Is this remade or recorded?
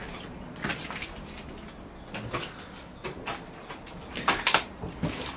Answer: recorded